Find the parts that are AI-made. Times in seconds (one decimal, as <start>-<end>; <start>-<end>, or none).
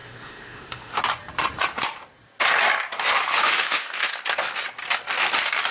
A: 0.0-1.0; 3.4-4.1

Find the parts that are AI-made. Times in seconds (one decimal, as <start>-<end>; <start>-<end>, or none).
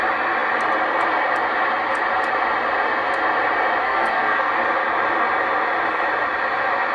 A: 3.8-4.5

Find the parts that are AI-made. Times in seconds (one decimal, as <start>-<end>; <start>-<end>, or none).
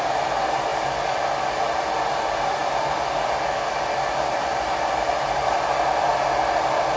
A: none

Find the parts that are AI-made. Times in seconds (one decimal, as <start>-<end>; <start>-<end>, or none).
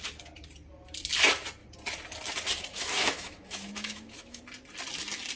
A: 2.7-4.4